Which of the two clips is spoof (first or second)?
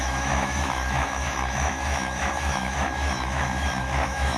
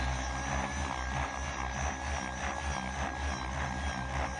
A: first